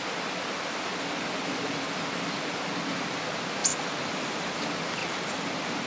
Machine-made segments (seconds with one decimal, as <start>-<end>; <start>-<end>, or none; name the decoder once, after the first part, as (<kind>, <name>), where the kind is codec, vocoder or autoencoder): 3.6-4.6 (vocoder, BigVGAN v2); 5.0-5.5